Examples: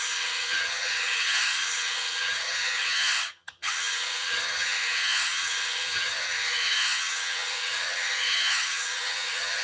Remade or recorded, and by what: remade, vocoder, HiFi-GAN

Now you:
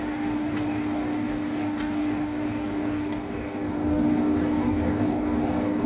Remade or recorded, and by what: remade, codec, DAC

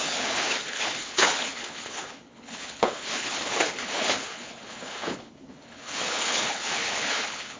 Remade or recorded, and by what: remade, codec, HILCodec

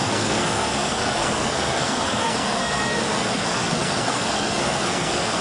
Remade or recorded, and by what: remade, codec, SNAC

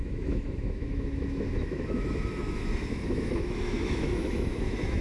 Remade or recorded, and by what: remade, autoencoder, DAC-VAE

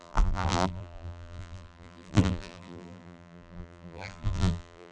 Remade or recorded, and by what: remade, vocoder, BigVGAN v2